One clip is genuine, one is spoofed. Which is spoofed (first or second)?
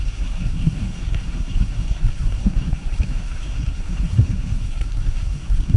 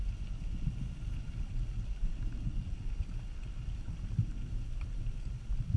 first